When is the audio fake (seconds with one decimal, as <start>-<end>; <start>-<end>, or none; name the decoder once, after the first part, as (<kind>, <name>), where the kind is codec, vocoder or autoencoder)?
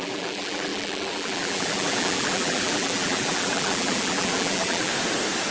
0.0-4.9 (vocoder, BigVGAN v2)